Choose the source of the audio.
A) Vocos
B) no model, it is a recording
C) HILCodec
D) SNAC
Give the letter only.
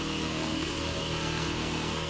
D